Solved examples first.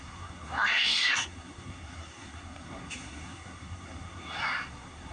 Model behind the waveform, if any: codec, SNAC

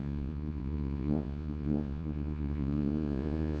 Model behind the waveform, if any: vocoder, Vocos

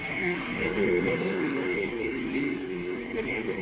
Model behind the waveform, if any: codec, SNAC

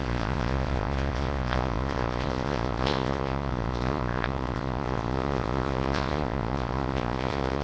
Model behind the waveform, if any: vocoder, Vocos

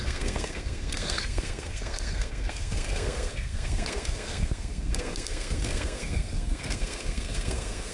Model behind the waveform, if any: codec, SNAC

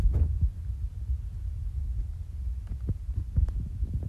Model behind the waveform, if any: none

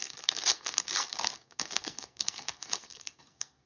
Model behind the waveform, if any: codec, SNAC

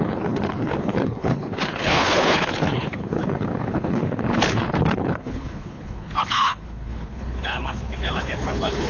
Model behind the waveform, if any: codec, HILCodec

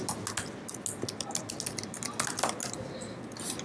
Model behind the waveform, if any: none